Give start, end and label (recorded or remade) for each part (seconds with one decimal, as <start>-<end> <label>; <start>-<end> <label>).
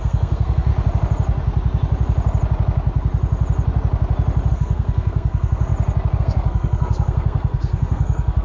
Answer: 0.0-0.7 remade; 0.7-4.5 recorded; 4.5-5.7 remade; 5.7-6.2 recorded; 6.2-8.4 remade